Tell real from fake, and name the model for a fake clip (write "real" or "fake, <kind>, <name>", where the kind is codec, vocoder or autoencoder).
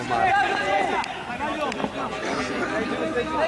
real